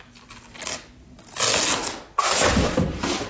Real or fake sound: real